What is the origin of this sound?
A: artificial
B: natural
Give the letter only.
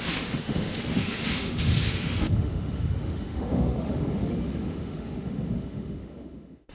A